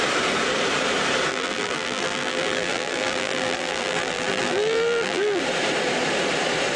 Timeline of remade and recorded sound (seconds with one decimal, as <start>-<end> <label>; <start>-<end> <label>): 0.0-1.3 recorded; 1.3-5.4 remade; 5.4-6.8 recorded

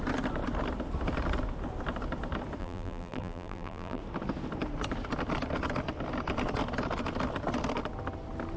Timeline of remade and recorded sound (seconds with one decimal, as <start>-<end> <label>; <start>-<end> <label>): 0.0-2.6 recorded; 2.6-4.0 remade; 4.0-8.6 recorded

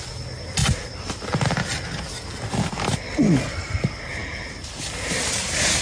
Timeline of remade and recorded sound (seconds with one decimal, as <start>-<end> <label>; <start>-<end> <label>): 0.0-0.6 recorded; 0.6-1.1 remade; 1.1-4.2 recorded; 4.2-5.8 remade

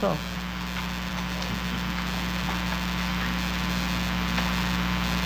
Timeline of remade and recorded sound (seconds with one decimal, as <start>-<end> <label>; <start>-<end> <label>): 0.0-5.3 recorded

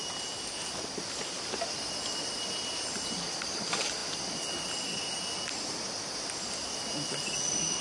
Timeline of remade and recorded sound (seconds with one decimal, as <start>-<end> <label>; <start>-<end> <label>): 0.0-7.8 recorded

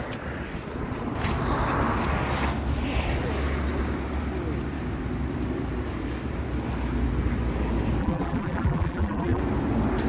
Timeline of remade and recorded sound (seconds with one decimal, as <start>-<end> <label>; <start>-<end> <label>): 0.0-8.0 recorded; 8.0-9.4 remade; 9.4-10.1 recorded

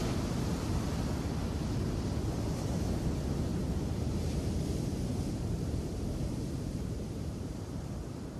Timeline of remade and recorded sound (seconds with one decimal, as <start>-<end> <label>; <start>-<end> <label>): 0.0-3.5 recorded; 3.5-4.4 remade; 4.4-5.1 recorded; 5.1-8.4 remade

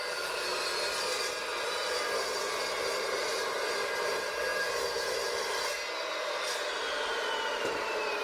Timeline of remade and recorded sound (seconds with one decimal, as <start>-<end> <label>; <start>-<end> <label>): 0.0-4.5 recorded; 4.5-8.2 remade